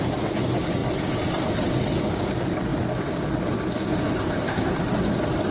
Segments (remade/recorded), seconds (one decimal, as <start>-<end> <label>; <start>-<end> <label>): 0.0-4.2 recorded; 4.2-4.7 remade; 4.7-5.5 recorded